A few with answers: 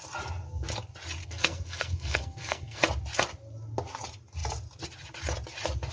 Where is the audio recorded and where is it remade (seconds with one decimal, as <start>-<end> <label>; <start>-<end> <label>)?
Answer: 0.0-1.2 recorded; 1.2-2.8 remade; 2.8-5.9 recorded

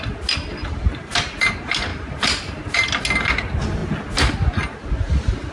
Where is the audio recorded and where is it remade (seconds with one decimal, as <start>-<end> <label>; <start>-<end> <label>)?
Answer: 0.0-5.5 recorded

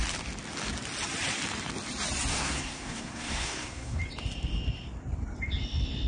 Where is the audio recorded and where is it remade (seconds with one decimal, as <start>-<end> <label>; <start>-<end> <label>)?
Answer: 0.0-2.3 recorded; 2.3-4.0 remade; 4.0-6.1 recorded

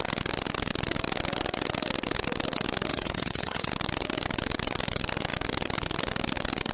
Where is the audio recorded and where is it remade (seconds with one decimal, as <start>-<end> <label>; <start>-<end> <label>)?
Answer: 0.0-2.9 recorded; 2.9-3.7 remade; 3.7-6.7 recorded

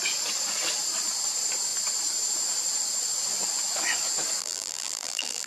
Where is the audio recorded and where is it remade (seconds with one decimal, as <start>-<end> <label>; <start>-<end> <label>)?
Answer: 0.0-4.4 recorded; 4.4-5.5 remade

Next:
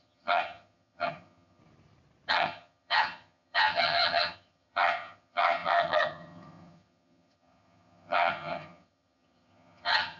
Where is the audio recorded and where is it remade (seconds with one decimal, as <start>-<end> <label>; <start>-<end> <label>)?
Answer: 0.0-1.6 remade; 1.6-2.3 recorded; 2.3-10.2 remade